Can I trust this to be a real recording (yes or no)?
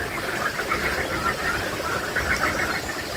yes